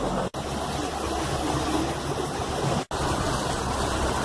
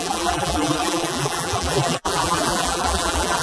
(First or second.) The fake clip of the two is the second